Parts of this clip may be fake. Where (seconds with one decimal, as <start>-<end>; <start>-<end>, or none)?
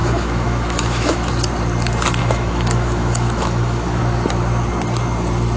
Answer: 0.0-1.3; 2.2-4.0